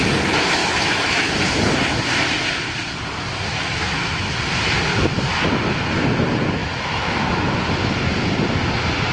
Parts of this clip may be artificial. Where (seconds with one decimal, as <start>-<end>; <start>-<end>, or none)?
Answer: 0.6-1.3; 3.5-4.3; 6.6-7.5